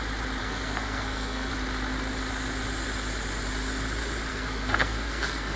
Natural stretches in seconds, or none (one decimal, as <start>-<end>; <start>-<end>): 0.0-0.4; 1.5-4.3